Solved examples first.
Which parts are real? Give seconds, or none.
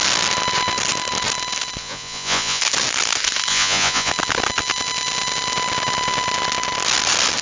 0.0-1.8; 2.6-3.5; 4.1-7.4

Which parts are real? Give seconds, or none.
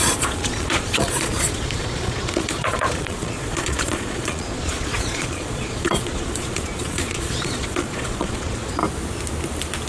8.8-9.9